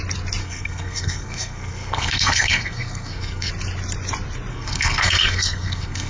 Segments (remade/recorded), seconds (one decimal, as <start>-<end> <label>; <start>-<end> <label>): 0.0-0.4 recorded; 0.4-3.5 remade; 3.5-4.5 recorded; 4.5-6.1 remade

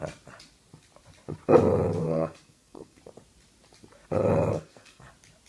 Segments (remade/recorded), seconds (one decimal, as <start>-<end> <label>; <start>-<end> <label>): 0.0-2.0 recorded; 2.0-3.0 remade; 3.0-4.5 recorded; 4.5-5.1 remade; 5.1-5.5 recorded

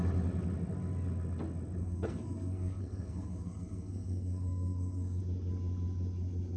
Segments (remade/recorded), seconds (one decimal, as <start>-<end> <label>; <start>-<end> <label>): 0.0-1.8 recorded; 1.8-5.2 remade; 5.2-6.6 recorded

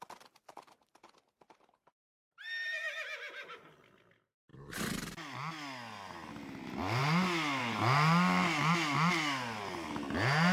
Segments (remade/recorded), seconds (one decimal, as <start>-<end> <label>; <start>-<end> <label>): 0.0-10.5 recorded

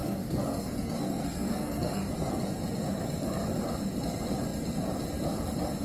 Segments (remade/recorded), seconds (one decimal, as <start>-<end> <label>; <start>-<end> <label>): 0.0-2.1 remade; 2.1-5.8 recorded